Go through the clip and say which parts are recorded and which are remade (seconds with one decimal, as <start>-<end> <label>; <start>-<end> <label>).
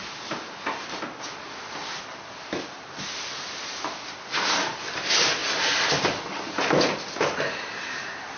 0.0-8.4 recorded